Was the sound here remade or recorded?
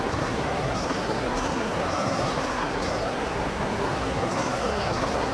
remade